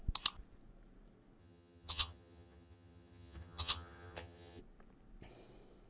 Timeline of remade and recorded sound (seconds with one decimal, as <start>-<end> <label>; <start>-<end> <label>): 0.0-1.4 recorded; 1.4-4.6 remade; 4.6-5.9 recorded